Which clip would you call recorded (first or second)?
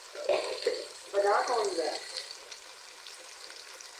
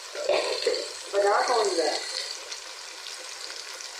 second